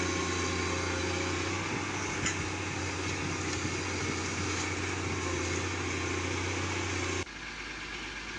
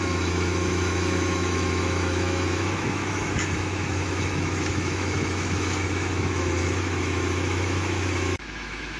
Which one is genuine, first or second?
first